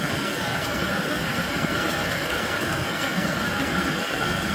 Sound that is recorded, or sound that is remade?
remade